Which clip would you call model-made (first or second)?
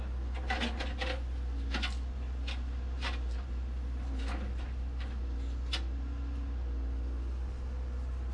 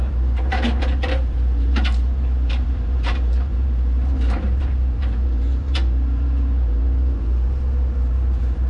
second